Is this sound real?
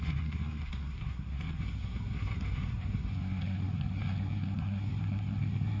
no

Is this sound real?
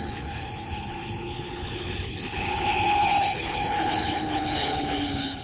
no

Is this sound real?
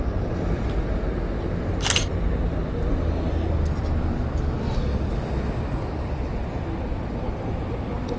yes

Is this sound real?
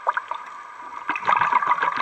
yes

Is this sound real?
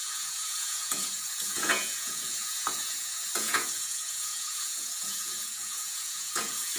no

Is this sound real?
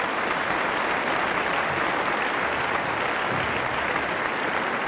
yes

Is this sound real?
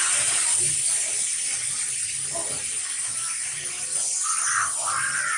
no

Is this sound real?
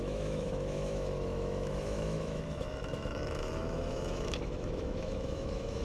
no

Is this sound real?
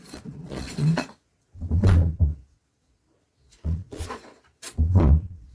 no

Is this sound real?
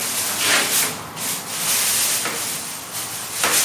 yes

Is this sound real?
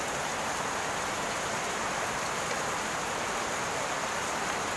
yes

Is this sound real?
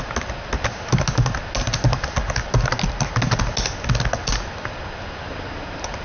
yes